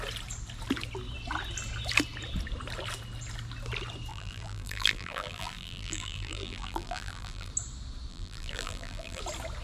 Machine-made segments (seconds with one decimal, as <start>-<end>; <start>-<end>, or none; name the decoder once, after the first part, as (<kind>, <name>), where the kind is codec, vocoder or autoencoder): 4.1-7.5 (vocoder, BigVGAN v2); 8.1-9.2